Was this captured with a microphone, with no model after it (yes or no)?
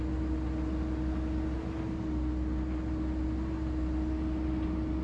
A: yes